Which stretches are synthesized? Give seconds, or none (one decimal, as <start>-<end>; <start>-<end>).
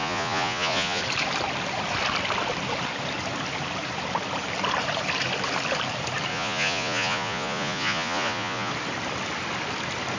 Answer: 0.0-1.0; 6.3-8.7